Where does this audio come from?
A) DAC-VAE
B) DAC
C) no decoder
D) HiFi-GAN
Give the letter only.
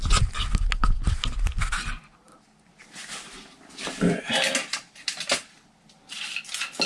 C